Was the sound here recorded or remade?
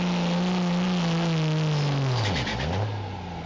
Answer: recorded